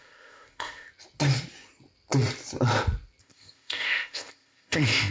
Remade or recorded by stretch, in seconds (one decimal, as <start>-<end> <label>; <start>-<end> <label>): 0.0-0.9 remade; 0.9-3.2 recorded; 3.2-5.1 remade